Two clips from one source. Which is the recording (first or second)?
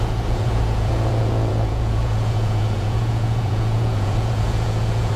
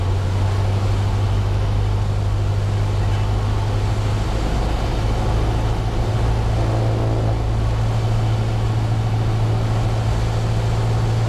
second